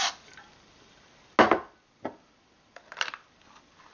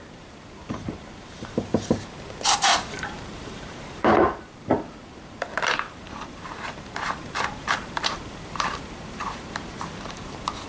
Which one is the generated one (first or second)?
second